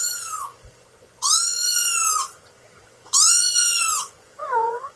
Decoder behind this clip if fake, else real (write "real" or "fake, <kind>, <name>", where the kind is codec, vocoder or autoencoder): fake, vocoder, Vocos